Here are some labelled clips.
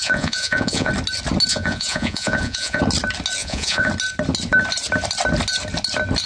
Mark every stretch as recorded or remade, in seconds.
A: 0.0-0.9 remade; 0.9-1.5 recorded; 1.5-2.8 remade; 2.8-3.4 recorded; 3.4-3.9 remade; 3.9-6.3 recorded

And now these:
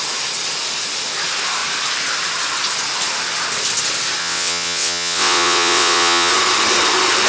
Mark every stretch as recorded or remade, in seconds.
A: 0.0-4.2 recorded; 4.2-6.3 remade; 6.3-7.3 recorded

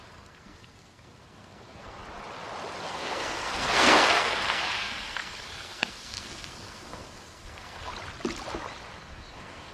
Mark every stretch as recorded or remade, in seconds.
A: 0.0-2.0 remade; 2.0-2.9 recorded; 2.9-7.9 remade; 7.9-9.0 recorded; 9.0-9.7 remade

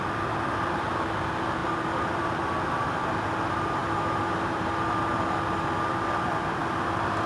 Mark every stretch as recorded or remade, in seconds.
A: 0.0-1.6 recorded; 1.6-2.5 remade; 2.5-3.8 recorded; 3.8-4.7 remade; 4.7-7.3 recorded

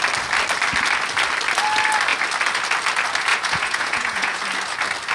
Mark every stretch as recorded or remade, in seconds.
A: 0.0-3.3 recorded; 3.3-4.4 remade; 4.4-5.1 recorded

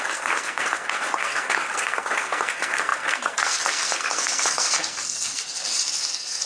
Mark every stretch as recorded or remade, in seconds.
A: 0.0-6.5 remade

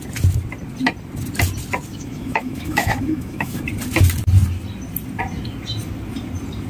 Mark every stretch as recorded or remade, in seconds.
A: 0.0-1.9 recorded; 1.9-3.6 remade; 3.6-6.7 recorded